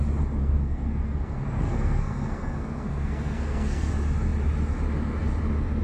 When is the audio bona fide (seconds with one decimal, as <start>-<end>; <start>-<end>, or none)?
0.0-0.4; 3.9-5.8